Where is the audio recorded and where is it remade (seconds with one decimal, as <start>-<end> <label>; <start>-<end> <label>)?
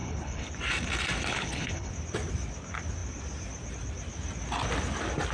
0.0-0.5 remade; 0.5-1.3 recorded; 1.3-1.9 remade; 1.9-5.3 recorded